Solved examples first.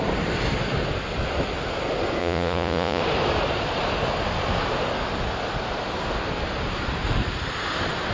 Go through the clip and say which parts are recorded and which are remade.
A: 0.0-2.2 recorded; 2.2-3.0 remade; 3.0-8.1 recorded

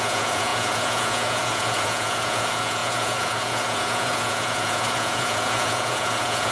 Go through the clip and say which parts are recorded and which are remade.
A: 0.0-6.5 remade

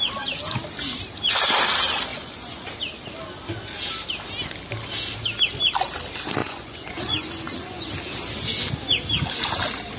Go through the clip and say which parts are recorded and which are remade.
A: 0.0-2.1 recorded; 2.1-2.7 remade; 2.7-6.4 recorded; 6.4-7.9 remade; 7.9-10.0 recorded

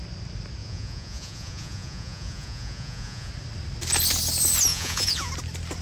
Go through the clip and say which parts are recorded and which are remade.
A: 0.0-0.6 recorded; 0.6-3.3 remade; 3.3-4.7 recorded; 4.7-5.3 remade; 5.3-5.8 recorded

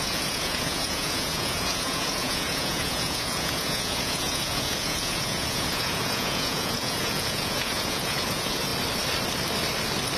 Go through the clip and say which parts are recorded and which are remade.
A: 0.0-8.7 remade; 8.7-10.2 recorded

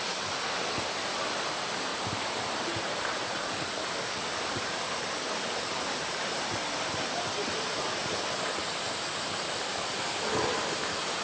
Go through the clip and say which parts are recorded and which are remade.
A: 0.0-11.2 recorded